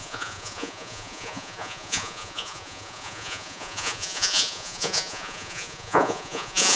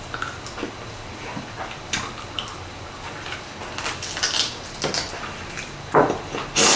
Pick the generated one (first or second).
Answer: first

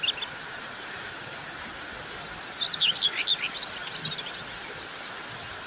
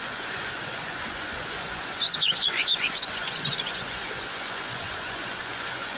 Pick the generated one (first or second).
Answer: second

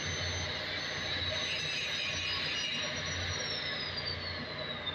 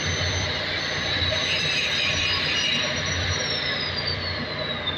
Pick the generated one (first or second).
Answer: second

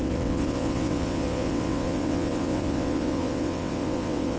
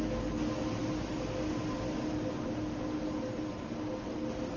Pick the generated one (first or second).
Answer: first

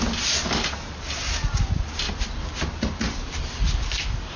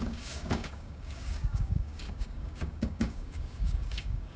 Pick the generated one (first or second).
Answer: second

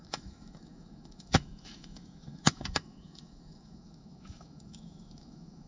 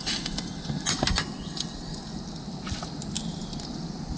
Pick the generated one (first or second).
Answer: first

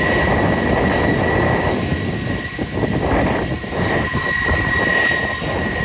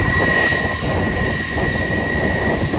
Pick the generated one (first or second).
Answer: second